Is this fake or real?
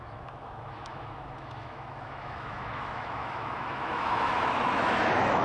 fake